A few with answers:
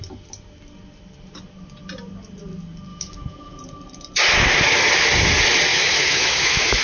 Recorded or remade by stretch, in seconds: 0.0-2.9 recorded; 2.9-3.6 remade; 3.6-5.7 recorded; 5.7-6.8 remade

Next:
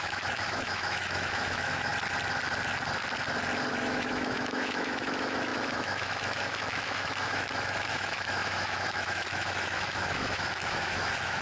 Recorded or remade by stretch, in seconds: 0.0-1.9 remade; 1.9-3.7 recorded; 3.7-11.4 remade